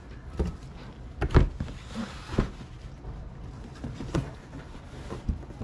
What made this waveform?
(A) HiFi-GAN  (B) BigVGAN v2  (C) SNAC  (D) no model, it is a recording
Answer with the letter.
D